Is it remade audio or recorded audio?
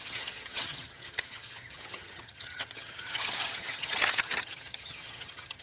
remade